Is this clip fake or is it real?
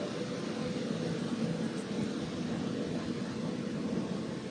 real